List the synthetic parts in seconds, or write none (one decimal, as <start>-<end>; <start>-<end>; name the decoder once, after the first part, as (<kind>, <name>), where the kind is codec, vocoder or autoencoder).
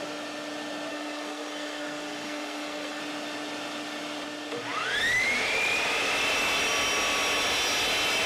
0.9-3.0 (codec, SNAC)